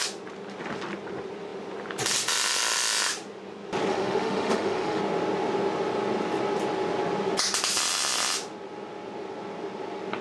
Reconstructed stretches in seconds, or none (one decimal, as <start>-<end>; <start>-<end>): 3.9-5.0